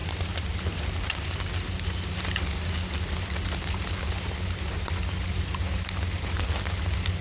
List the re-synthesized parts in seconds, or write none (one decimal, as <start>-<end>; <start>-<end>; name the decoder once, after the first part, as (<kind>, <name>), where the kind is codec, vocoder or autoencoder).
none